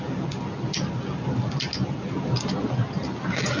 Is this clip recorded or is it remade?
recorded